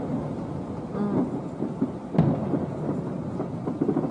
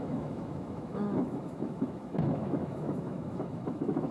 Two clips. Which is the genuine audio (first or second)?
first